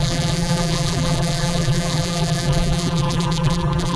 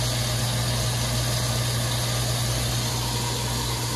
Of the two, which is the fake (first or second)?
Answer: first